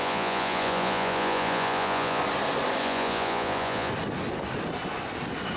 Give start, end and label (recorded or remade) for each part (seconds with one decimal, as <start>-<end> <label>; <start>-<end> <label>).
0.0-2.2 remade; 2.2-2.8 recorded; 2.8-3.9 remade; 3.9-5.6 recorded